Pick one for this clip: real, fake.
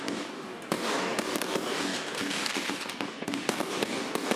fake